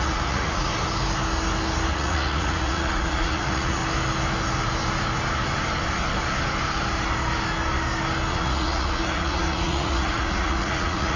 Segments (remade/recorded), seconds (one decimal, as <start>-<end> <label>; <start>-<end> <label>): 0.0-0.7 remade; 0.7-1.9 recorded; 1.9-3.8 remade; 3.8-8.3 recorded; 8.3-11.2 remade